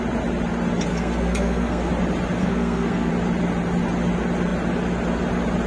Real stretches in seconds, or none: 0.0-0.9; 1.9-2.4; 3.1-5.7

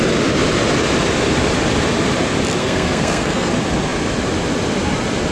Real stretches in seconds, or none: 0.0-2.6; 3.5-5.3

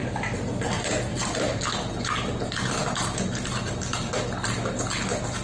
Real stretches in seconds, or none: 0.6-1.1; 1.6-2.8; 4.2-5.4

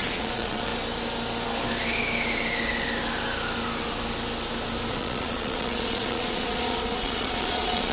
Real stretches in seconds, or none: 0.7-4.9

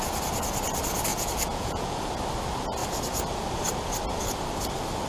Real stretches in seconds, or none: 0.0-1.1; 2.0-5.1

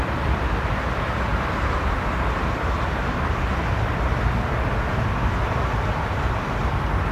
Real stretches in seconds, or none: 0.0-7.1